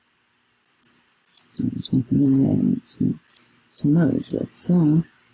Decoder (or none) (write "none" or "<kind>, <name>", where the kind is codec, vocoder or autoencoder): none